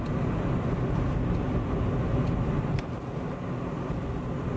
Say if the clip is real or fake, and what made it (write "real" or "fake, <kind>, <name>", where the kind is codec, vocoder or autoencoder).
real